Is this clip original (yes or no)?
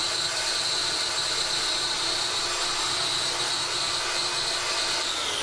yes